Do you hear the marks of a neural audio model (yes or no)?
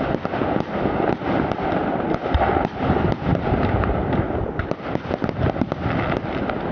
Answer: no